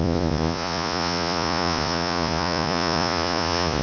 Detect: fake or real fake